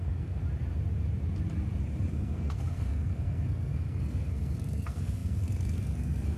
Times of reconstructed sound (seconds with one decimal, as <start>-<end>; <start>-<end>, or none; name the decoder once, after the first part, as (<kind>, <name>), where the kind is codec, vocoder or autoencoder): 0.0-0.4 (codec, SNAC); 2.1-6.4